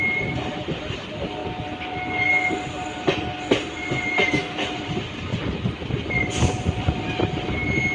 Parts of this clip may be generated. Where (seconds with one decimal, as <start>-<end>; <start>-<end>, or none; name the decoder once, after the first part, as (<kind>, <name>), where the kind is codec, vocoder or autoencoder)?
none